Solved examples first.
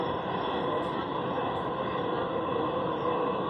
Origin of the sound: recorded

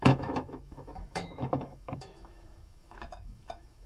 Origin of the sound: remade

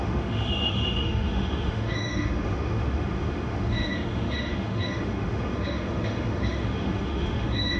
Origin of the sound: remade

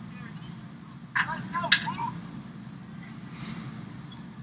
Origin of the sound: recorded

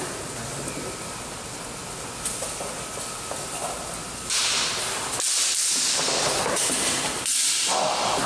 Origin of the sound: recorded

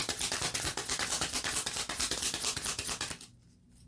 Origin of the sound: recorded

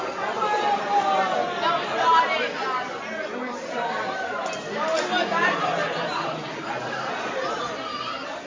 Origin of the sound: recorded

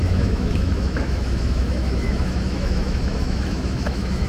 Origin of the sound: remade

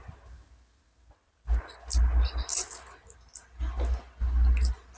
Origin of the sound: recorded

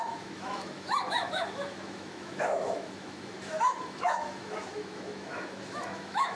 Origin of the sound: remade